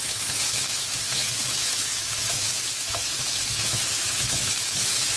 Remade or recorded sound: remade